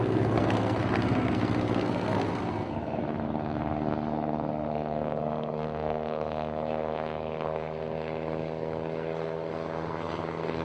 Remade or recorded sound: remade